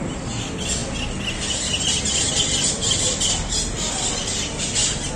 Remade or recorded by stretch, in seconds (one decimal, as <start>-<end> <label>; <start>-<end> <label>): 0.0-5.2 recorded